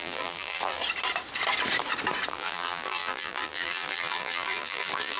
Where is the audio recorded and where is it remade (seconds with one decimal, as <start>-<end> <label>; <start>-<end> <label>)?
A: 0.0-0.8 remade; 0.8-2.3 recorded; 2.3-5.2 remade